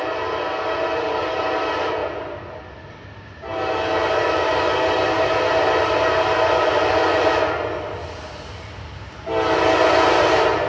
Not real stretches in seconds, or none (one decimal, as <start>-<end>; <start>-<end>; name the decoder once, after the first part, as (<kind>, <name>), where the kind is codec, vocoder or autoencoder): none

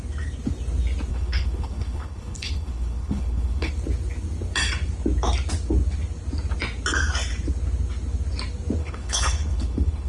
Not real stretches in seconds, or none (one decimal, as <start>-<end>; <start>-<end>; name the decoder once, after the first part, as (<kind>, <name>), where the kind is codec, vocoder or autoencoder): 1.1-3.7 (codec, HILCodec); 8.8-10.1

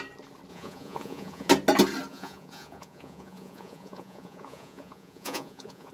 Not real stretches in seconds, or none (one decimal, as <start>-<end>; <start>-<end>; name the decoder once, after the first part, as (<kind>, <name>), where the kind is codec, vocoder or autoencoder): 0.5-1.5 (vocoder, Vocos); 2.1-5.9

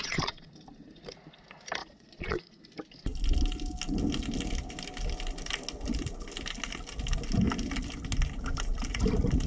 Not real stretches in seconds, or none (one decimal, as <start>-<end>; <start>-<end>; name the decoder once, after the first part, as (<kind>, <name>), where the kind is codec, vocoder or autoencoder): 0.0-0.5 (vocoder, Vocos); 1.8-2.6

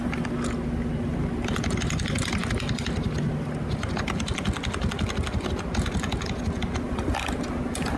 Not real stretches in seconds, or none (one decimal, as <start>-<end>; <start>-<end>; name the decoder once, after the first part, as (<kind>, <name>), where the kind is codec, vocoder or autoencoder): none

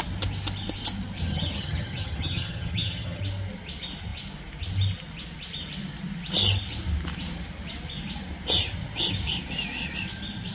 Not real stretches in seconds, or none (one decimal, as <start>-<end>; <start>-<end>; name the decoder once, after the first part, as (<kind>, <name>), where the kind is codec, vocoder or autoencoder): 1.2-3.2 (vocoder, HiFi-GAN)